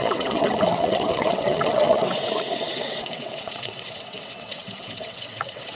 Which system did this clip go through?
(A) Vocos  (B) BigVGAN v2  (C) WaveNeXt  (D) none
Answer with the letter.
C